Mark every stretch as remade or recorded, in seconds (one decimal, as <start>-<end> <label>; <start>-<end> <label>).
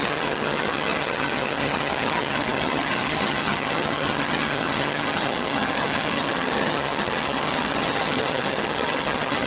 0.0-9.5 remade